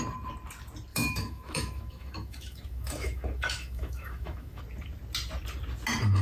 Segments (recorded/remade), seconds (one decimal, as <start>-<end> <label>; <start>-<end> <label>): 0.0-0.9 recorded; 0.9-4.6 remade; 4.6-6.2 recorded